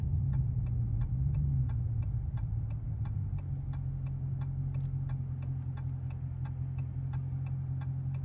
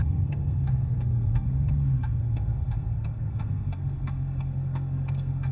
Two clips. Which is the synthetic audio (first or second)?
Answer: second